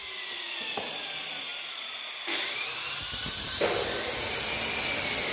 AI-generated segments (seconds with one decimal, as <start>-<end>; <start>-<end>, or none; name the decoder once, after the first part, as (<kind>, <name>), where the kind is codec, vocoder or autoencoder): none